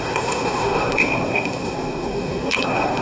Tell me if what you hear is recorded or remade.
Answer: remade